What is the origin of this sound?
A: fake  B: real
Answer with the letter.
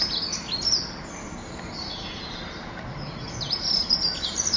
B